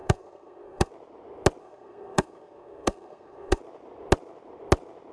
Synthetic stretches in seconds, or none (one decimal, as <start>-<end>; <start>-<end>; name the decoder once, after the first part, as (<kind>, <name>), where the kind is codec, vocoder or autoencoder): 0.0-0.9 (codec, SNAC); 1.6-3.6